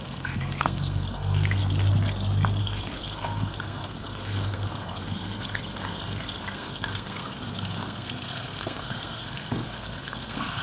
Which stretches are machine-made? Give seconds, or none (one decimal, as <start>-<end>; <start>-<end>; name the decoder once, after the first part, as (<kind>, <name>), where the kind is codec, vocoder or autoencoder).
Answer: 0.0-1.6 (codec, SNAC); 2.6-10.6